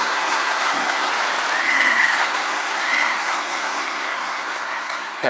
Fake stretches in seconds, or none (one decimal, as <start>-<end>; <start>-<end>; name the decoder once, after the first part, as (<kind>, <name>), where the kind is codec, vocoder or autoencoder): 0.0-1.1 (codec, SNAC); 1.6-5.3